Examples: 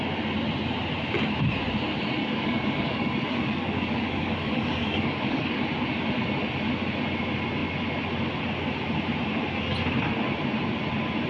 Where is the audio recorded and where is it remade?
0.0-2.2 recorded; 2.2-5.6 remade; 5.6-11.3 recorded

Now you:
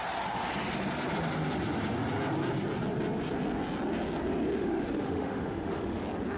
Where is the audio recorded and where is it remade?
0.0-4.6 recorded; 4.6-6.0 remade; 6.0-6.4 recorded

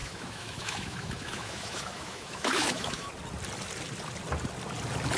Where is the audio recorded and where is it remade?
0.0-3.1 remade; 3.1-5.2 recorded

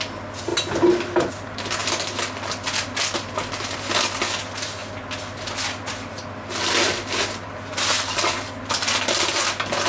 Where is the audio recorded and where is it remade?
0.0-9.9 recorded

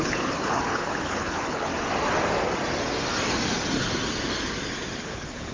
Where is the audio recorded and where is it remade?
0.0-1.7 remade; 1.7-5.0 recorded; 5.0-5.5 remade

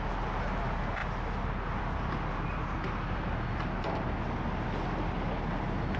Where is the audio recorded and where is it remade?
0.0-6.0 recorded